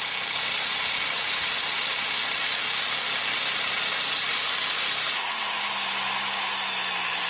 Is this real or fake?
real